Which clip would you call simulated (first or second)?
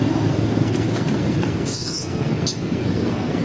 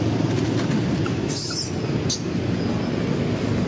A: first